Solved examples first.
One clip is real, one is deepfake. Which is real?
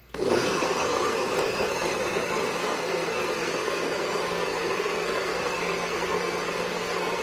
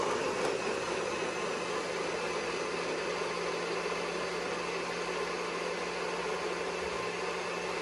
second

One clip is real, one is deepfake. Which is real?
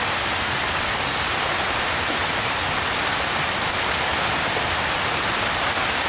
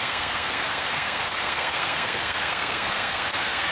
first